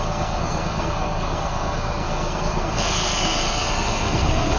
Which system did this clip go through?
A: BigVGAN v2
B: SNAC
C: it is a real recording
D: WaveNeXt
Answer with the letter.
B